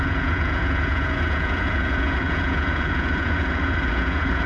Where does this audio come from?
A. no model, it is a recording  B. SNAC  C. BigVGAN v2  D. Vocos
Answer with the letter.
D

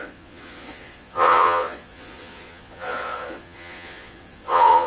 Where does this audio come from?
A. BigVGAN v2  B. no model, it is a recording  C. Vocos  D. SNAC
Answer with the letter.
C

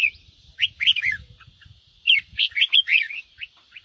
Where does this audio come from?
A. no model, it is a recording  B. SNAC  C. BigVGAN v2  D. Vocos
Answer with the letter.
D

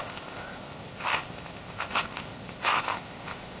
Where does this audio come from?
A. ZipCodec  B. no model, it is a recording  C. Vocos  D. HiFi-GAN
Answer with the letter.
A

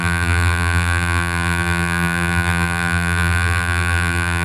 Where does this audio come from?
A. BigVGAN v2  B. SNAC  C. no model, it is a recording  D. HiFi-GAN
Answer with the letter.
A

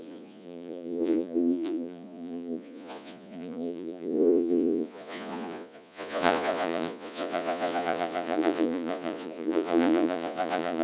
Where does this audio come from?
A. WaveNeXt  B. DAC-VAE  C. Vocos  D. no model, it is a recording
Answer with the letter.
C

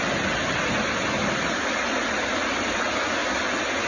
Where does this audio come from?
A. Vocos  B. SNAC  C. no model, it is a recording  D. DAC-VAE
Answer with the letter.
C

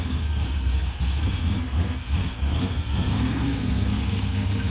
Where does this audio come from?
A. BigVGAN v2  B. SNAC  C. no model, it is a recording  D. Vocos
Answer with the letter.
B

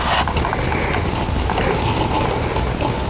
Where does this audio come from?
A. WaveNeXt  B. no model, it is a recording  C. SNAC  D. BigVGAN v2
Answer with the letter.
B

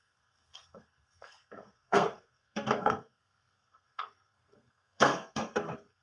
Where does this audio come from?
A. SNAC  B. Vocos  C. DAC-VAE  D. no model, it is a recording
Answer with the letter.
A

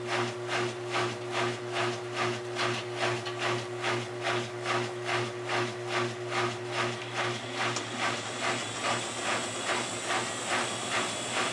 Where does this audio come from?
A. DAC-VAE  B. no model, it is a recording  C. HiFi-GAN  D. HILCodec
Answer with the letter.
B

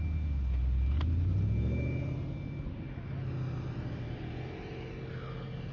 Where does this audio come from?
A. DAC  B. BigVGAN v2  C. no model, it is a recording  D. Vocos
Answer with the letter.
C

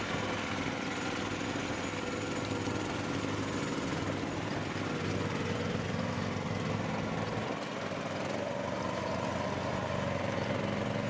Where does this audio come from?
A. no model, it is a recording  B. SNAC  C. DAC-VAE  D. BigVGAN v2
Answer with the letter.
A